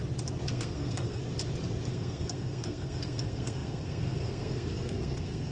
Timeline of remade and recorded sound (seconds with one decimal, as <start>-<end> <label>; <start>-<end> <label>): 0.0-0.5 recorded; 0.5-1.2 remade; 1.2-1.9 recorded; 1.9-5.5 remade

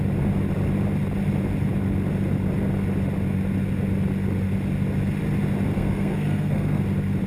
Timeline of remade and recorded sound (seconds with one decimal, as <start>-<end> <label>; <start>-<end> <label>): 0.0-5.7 recorded; 5.7-6.8 remade; 6.8-7.3 recorded

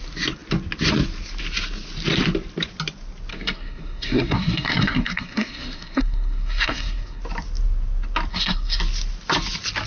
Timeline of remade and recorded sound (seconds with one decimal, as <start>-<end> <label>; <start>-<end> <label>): 0.0-3.3 recorded; 3.3-7.2 remade; 7.2-8.3 recorded; 8.3-8.8 remade; 8.8-9.9 recorded